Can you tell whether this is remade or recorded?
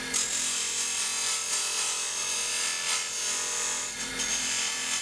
recorded